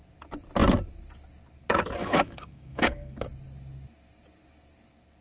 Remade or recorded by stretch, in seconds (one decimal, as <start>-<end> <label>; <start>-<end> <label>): 0.0-2.0 recorded; 2.0-3.2 remade; 3.2-5.2 recorded